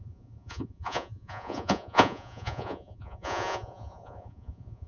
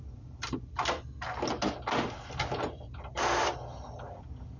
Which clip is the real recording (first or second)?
second